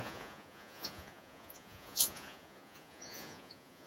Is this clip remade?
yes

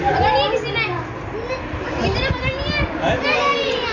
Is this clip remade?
no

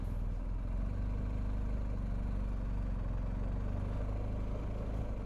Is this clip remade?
no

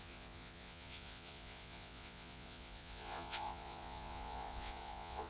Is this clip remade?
yes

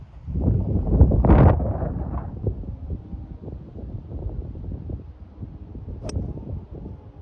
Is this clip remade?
no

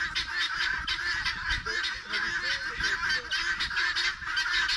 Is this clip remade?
no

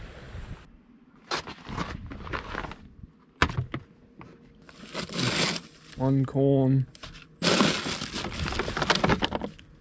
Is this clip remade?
no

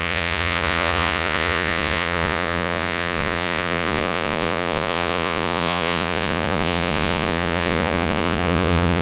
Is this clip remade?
yes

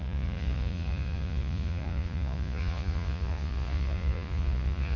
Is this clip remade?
yes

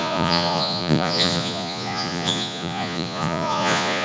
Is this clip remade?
yes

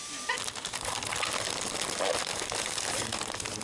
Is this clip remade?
no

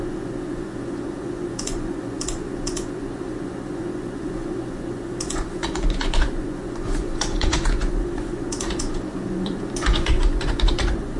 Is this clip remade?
yes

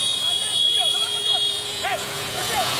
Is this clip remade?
yes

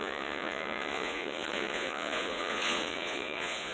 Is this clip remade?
yes